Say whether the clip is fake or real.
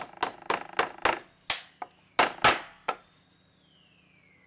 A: real